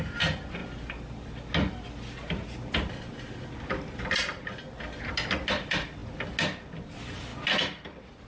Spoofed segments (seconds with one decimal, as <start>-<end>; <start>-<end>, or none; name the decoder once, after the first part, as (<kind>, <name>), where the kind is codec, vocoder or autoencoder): none